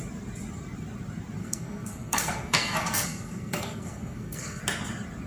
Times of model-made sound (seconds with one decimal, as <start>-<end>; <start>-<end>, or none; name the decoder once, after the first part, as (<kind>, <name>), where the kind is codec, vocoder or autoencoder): 1.4-4.6 (codec, SNAC)